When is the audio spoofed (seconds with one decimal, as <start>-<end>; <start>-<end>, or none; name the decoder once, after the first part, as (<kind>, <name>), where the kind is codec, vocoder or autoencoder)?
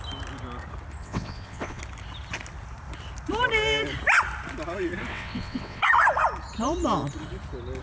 1.0-1.8 (vocoder, WaveNeXt); 5.1-5.8